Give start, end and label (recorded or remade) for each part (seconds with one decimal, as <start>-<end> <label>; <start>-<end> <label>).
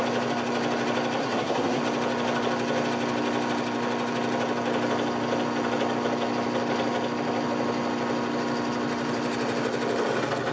0.0-1.2 recorded; 1.2-1.8 remade; 1.8-10.5 recorded